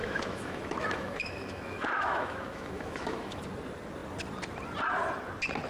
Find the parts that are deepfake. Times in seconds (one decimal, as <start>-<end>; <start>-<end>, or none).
0.0-3.4

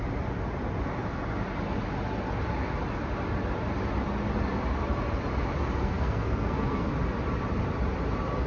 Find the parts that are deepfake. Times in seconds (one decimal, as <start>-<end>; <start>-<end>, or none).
5.8-6.9

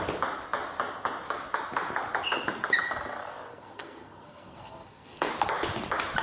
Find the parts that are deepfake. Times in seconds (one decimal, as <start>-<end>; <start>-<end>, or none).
3.5-5.3